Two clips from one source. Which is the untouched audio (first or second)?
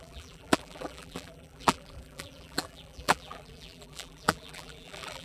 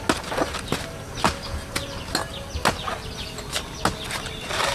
second